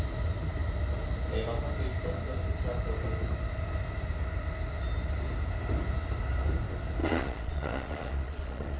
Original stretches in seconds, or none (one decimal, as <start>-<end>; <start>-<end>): 0.0-7.0